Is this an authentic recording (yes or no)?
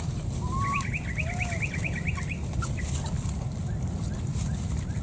no